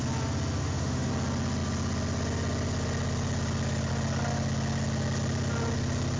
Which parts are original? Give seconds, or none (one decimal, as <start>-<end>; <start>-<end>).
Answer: 0.0-0.6; 1.1-6.2